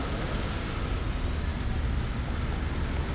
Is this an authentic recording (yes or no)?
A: yes